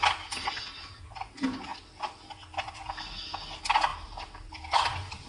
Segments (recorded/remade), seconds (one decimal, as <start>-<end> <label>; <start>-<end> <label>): 0.0-5.3 recorded